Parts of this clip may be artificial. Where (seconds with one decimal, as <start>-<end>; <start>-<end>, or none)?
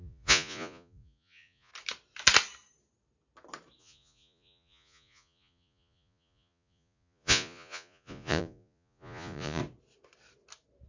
0.0-1.7; 3.8-9.6